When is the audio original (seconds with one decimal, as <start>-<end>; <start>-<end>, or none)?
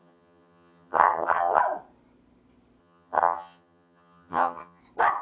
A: 1.6-2.8; 4.8-5.2